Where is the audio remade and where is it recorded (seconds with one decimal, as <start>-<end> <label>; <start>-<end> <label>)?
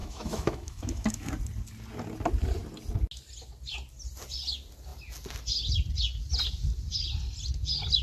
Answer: 0.0-1.3 remade; 1.3-8.0 recorded